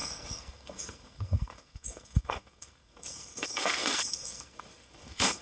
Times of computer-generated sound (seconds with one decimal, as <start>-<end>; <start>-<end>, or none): 0.0-5.4